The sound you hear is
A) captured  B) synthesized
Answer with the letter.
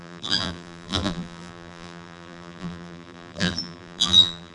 B